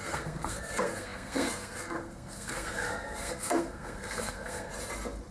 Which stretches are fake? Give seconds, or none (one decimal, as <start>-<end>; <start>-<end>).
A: 0.0-4.7